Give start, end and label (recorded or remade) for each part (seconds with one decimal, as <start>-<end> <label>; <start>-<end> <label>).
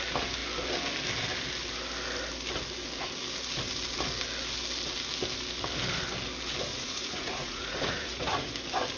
0.0-6.7 recorded; 6.7-8.5 remade; 8.5-9.0 recorded